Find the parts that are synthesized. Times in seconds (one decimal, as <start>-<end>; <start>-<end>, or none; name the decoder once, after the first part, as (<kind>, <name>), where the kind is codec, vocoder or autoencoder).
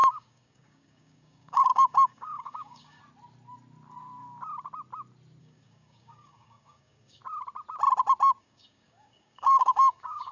0.0-3.0 (codec, DAC); 5.4-7.2; 8.4-10.3